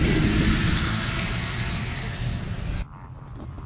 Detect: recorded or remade recorded